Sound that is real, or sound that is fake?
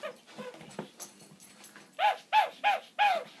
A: real